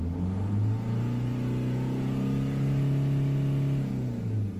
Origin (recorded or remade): recorded